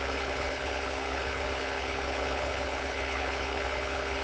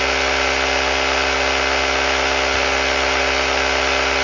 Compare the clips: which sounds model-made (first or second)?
first